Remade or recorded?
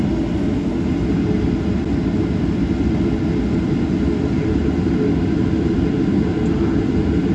recorded